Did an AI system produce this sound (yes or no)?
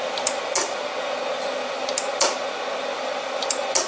no